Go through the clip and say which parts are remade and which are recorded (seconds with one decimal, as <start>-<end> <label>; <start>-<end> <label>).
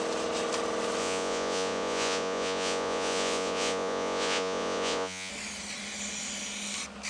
0.0-1.0 recorded; 1.0-5.3 remade; 5.3-7.1 recorded